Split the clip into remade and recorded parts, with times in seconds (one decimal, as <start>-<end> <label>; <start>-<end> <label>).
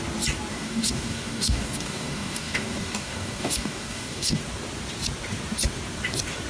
0.0-0.5 recorded; 0.5-4.4 remade; 4.4-6.5 recorded